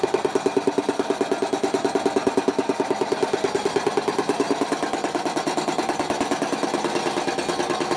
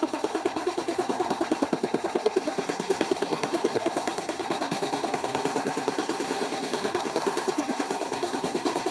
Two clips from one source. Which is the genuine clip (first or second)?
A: first